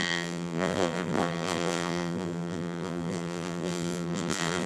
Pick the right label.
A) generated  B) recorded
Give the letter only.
A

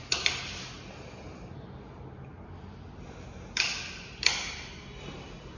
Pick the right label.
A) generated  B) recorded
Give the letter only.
B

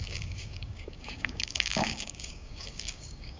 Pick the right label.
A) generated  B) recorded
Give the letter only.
A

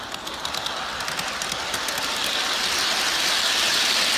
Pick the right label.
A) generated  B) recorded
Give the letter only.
B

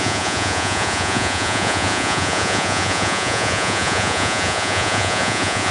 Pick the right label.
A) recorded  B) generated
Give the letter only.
B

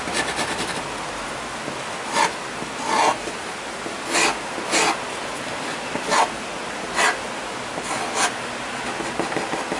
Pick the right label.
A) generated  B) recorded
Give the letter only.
B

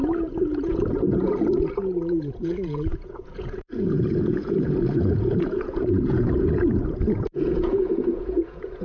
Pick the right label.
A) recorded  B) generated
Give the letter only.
B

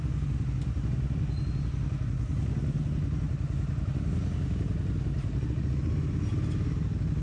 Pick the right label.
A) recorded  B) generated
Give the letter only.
A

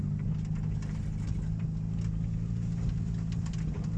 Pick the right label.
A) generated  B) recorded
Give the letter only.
B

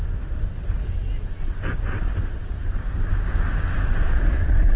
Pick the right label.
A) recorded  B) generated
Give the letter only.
A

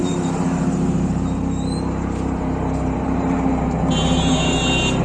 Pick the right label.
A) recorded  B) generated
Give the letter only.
B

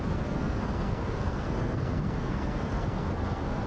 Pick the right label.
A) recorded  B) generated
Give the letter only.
B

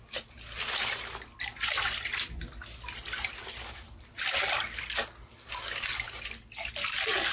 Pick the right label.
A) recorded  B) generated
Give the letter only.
A